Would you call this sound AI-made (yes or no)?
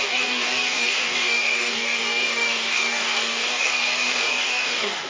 yes